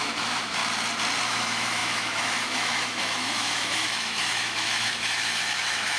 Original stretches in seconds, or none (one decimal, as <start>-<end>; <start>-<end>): 0.6-1.2